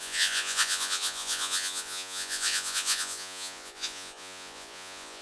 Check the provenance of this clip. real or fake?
fake